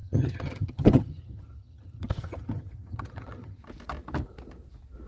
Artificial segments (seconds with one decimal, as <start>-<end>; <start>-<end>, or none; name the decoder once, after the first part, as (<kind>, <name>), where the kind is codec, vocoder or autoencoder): 0.0-3.6 (vocoder, HiFi-GAN)